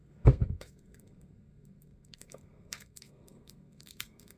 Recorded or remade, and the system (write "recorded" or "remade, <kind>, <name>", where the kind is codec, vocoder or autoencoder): remade, codec, SNAC